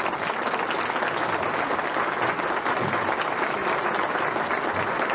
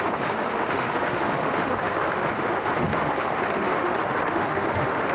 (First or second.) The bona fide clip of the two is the first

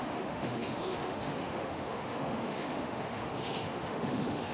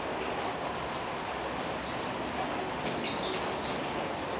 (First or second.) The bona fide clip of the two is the second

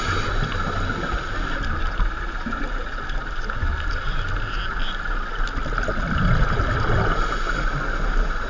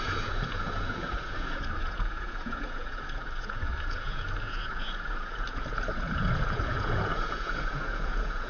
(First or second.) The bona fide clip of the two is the first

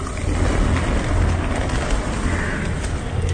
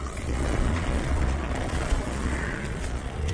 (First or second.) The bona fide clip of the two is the first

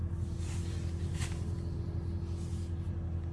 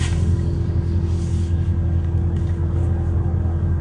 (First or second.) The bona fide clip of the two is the first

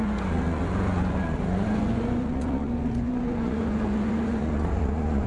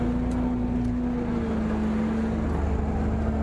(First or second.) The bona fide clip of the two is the second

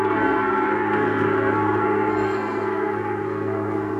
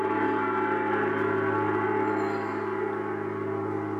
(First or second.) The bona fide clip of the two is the second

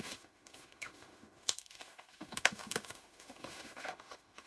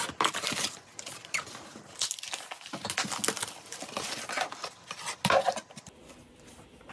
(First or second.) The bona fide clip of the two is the second